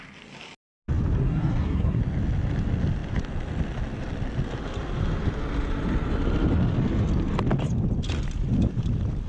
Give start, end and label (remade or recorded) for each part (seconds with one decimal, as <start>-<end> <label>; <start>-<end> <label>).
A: 0.0-1.2 recorded; 1.2-2.0 remade; 2.0-9.3 recorded